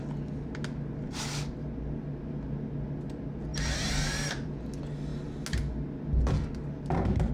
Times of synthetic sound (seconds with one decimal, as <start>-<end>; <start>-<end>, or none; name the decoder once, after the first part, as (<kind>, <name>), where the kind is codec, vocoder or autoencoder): 3.5-4.5 (vocoder, BigVGAN v2)